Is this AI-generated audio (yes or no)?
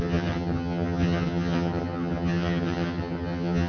yes